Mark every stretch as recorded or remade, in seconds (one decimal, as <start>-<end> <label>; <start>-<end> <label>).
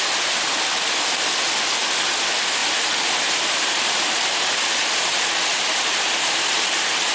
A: 0.0-2.6 recorded; 2.6-4.5 remade; 4.5-5.5 recorded; 5.5-7.1 remade